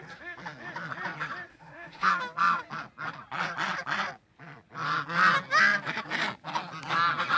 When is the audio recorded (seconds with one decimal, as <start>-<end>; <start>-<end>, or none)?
0.0-1.5; 2.1-7.4